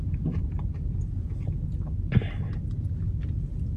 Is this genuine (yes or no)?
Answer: yes